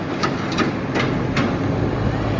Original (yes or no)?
yes